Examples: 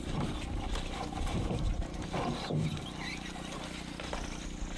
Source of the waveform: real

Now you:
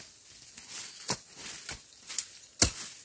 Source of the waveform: real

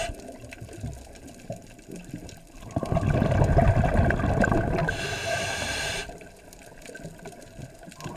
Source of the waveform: real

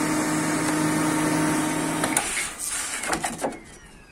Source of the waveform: real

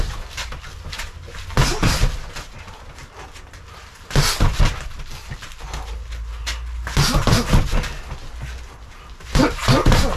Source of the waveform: real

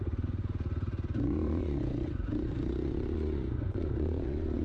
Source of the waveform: fake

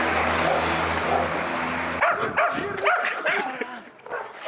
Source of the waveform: real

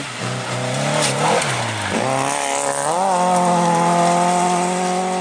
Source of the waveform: real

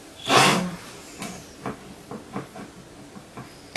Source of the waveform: real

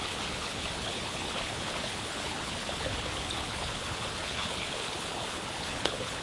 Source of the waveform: fake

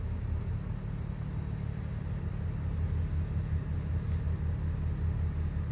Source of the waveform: real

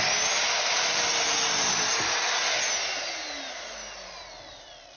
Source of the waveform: real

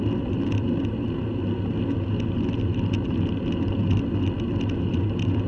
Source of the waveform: real